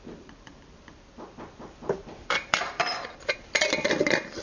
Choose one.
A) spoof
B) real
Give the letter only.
A